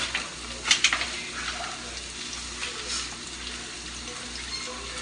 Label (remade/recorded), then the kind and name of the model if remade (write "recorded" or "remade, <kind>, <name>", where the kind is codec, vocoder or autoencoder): recorded